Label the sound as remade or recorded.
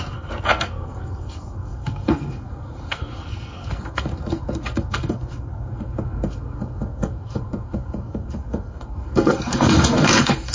remade